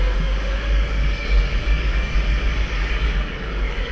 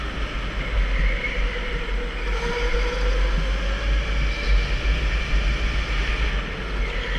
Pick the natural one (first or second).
second